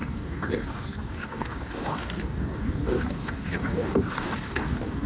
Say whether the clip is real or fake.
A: fake